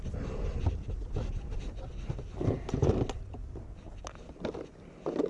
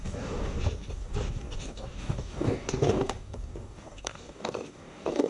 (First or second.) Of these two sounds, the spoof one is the second